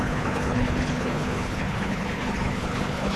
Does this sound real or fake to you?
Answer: fake